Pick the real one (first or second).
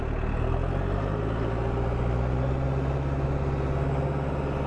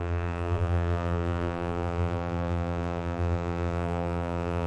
first